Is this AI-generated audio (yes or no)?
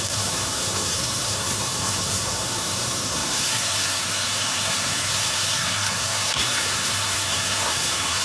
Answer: yes